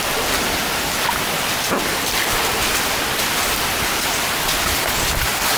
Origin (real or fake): real